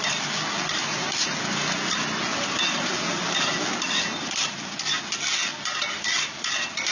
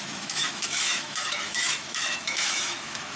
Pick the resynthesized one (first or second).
second